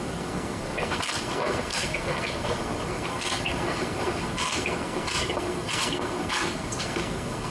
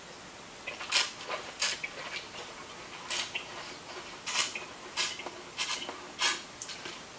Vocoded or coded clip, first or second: first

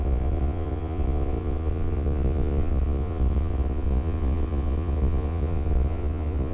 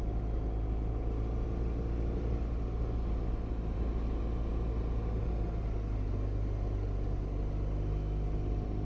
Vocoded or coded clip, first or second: first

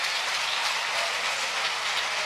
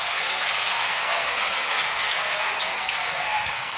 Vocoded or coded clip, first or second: second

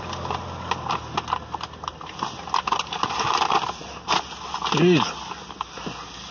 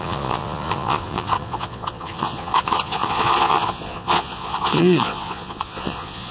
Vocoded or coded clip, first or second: second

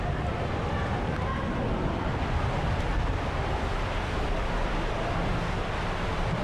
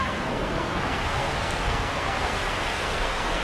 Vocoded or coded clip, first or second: second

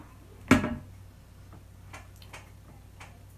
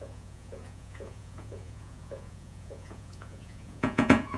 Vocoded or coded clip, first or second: second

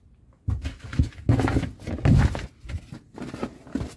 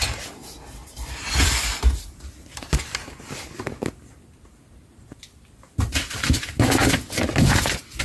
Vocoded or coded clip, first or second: second